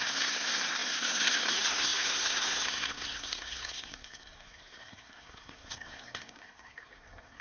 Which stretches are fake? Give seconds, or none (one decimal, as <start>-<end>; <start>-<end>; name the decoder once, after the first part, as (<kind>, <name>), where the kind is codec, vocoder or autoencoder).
0.0-7.4 (codec, SNAC)